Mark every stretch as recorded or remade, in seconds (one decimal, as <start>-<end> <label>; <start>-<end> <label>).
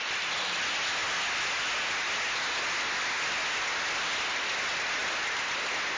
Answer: 0.0-6.0 recorded